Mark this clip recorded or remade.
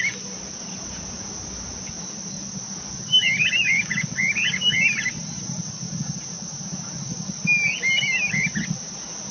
recorded